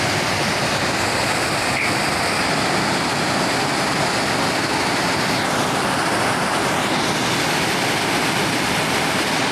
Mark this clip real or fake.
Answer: real